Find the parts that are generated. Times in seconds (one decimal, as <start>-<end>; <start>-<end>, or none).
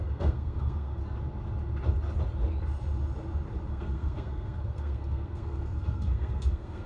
0.0-1.0; 3.7-6.9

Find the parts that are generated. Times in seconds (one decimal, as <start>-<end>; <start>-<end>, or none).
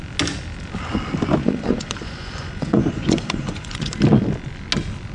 1.4-3.9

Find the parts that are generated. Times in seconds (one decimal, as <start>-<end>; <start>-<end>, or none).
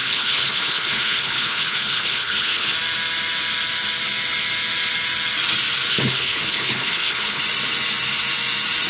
0.0-2.7; 5.9-7.4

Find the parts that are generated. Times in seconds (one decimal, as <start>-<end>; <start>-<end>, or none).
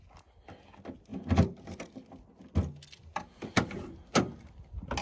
none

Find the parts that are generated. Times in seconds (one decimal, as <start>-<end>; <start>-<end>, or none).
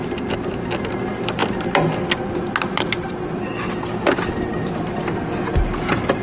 none